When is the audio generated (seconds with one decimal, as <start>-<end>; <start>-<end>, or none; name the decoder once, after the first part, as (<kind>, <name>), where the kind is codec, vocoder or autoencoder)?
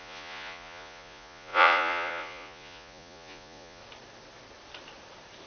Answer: 0.0-3.8 (vocoder, Vocos)